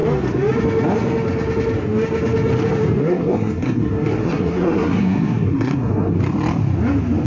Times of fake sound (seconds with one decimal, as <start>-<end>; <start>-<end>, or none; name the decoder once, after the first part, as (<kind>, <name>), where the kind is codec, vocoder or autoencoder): 3.0-6.2 (codec, SNAC)